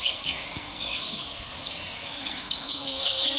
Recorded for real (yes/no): no